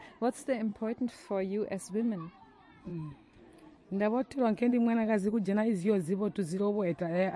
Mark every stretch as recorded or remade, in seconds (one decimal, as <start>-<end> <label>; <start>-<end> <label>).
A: 0.0-0.7 remade; 0.7-1.9 recorded; 1.9-7.4 remade